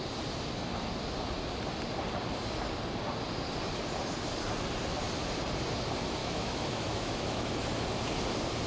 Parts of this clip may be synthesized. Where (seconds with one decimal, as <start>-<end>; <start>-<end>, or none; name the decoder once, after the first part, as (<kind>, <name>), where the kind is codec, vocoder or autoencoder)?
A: 6.2-7.5 (autoencoder, DAC-VAE)